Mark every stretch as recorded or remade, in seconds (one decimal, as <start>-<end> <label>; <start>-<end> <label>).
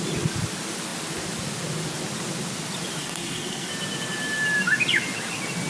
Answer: 0.0-3.0 recorded; 3.0-3.7 remade; 3.7-5.7 recorded